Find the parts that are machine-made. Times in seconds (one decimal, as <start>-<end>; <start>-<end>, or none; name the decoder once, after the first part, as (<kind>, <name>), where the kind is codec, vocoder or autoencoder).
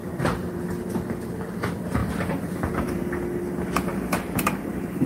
0.0-0.7 (vocoder, BigVGAN v2); 2.0-3.0; 3.9-5.1